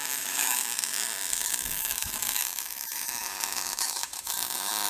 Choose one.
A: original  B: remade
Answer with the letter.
B